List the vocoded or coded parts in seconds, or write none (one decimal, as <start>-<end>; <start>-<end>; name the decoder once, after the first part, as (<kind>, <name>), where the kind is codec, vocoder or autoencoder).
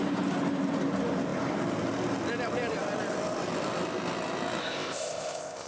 4.6-5.7 (codec, ZipCodec)